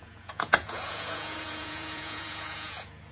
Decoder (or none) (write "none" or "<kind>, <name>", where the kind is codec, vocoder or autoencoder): vocoder, Vocos